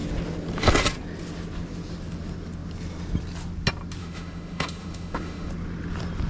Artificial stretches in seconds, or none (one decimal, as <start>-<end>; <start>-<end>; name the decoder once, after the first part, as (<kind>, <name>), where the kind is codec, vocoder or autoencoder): 4.0-5.5 (autoencoder, DAC-VAE)